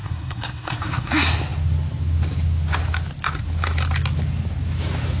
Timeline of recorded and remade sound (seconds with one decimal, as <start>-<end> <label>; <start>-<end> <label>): 0.0-1.1 remade; 1.1-5.2 recorded